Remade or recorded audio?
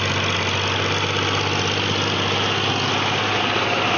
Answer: recorded